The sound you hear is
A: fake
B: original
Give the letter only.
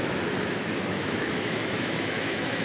A